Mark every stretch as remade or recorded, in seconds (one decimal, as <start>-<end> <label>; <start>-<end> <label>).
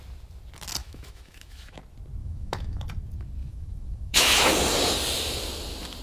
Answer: 0.0-0.8 recorded; 0.8-1.8 remade; 1.8-2.2 recorded; 2.2-2.8 remade; 2.8-3.4 recorded; 3.4-4.5 remade; 4.5-6.0 recorded